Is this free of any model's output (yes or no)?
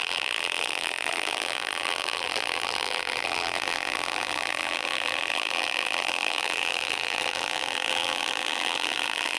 no